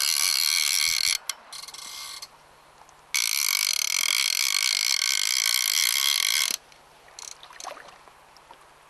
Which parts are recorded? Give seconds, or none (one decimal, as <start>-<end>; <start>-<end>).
0.0-8.9